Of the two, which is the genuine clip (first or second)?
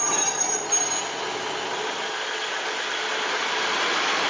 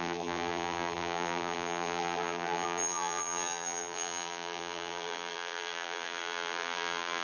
first